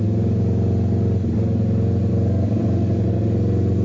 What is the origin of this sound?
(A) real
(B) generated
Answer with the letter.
A